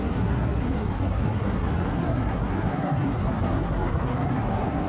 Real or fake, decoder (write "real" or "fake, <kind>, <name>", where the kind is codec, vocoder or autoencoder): fake, codec, SNAC